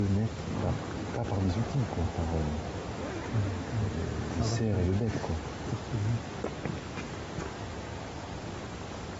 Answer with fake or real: real